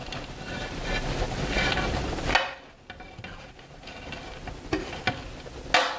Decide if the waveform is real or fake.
real